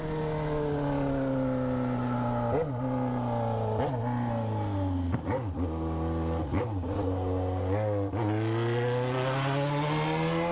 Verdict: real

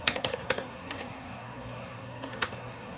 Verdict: fake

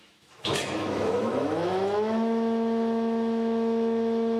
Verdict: fake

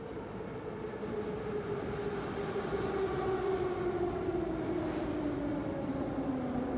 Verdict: real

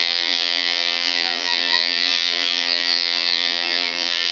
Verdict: fake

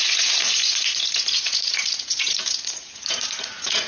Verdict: fake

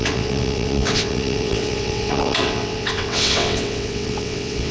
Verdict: fake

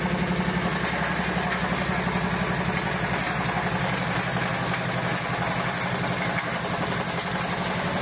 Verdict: real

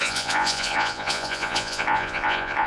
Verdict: fake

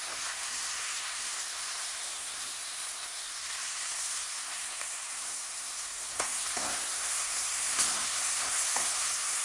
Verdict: fake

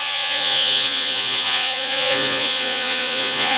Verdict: fake